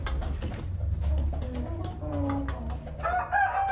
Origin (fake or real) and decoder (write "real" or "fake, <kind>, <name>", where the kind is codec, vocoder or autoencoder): real